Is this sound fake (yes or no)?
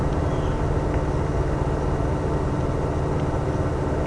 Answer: no